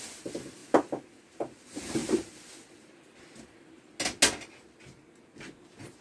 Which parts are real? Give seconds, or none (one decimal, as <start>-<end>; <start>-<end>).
0.0-6.0